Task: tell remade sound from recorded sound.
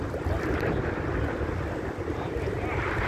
recorded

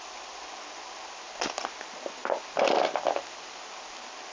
recorded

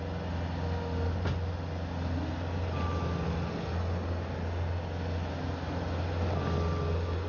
recorded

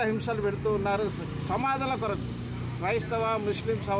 recorded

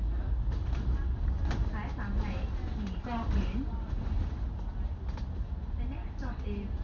recorded